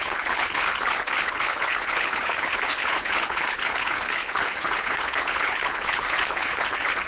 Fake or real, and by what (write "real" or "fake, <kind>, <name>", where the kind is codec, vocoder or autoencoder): fake, codec, HILCodec